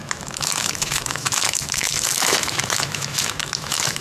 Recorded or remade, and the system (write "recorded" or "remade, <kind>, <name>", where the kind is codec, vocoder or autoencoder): remade, autoencoder, DAC-VAE